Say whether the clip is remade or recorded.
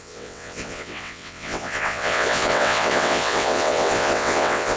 remade